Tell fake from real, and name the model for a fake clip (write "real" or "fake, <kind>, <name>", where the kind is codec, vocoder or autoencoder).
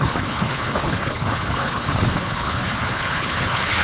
fake, codec, HILCodec